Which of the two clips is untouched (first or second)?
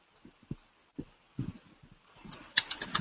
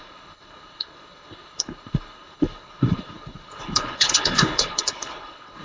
first